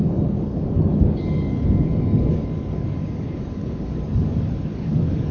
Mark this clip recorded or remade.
remade